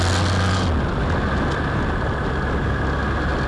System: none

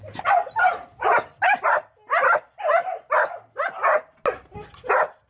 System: none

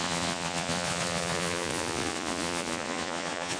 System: vocoder, Vocos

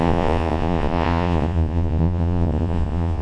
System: vocoder, Vocos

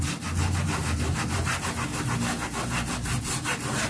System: none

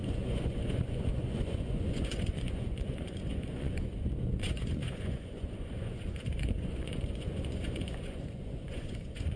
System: vocoder, Vocos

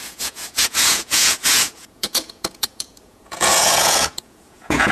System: vocoder, Vocos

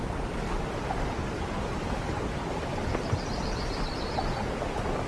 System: none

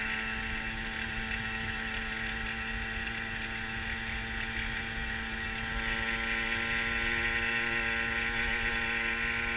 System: none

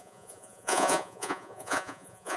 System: vocoder, Vocos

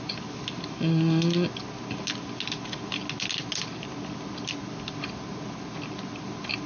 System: none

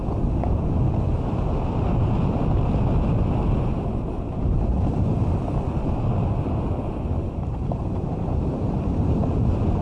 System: none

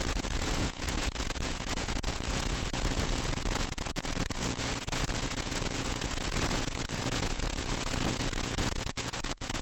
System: vocoder, Vocos